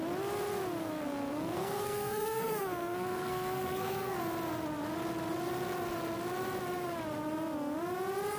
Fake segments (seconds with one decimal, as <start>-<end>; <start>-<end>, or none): 0.8-4.2